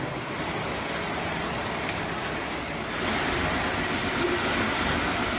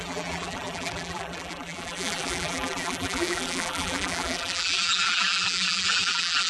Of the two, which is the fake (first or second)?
second